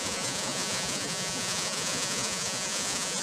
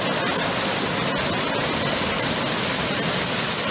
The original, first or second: second